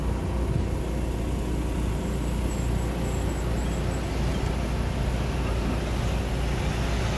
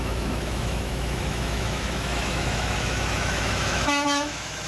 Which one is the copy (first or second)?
second